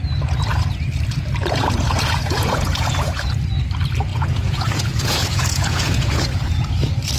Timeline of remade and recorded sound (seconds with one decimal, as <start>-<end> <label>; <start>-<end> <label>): 0.0-1.4 recorded; 1.4-3.3 remade; 3.3-4.1 recorded; 4.1-6.7 remade; 6.7-7.2 recorded